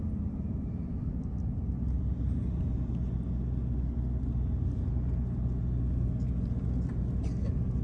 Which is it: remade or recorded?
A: recorded